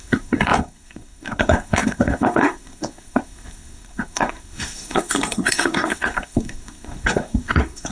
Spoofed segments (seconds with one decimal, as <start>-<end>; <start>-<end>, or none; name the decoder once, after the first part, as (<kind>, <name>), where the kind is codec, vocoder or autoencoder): 0.0-7.9 (codec, SNAC)

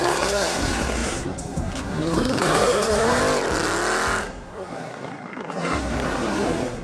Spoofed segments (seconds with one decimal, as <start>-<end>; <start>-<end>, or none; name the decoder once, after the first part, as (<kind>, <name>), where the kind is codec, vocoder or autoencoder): 0.0-3.2 (codec, SNAC); 4.2-6.8

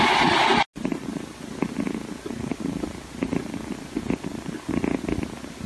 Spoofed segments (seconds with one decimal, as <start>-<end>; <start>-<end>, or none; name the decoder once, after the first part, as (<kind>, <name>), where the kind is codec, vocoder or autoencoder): none

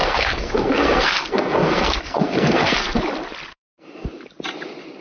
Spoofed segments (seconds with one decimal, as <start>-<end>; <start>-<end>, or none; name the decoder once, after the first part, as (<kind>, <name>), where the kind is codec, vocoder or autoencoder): 0.0-3.0 (codec, SNAC); 3.5-4.1

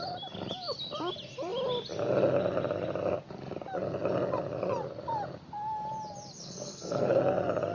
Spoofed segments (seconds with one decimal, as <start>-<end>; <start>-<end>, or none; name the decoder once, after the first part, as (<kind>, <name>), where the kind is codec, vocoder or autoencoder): 6.4-7.2 (codec, SNAC)

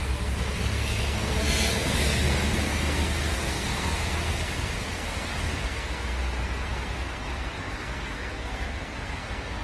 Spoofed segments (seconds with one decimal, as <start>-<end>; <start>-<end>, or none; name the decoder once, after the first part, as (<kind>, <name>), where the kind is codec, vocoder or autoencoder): 0.0-9.6 (codec, SNAC)

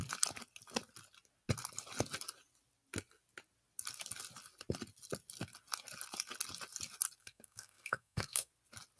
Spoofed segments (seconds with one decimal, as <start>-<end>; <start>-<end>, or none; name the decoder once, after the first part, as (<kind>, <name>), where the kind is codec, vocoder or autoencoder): 7.2-8.5 (codec, SNAC)

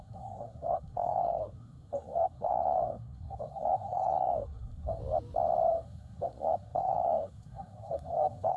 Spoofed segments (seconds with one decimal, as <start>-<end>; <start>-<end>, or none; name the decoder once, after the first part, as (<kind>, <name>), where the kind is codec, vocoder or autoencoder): 0.0-5.0 (codec, SNAC); 5.7-8.6